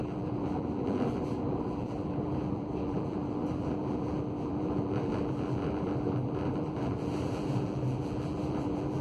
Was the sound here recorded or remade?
remade